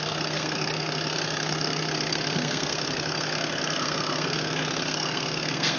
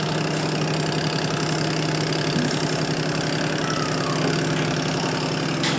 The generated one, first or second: first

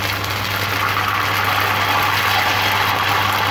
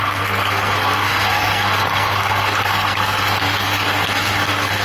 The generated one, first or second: second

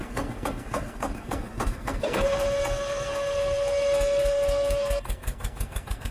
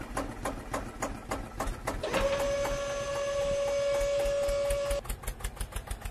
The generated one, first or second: first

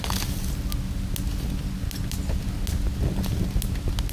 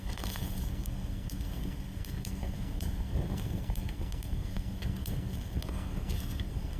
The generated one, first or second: second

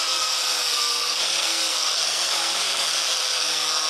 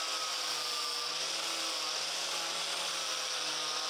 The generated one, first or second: first